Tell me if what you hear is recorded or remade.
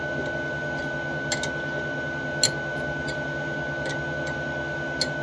recorded